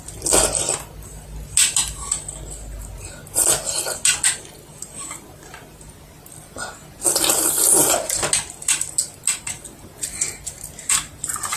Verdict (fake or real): real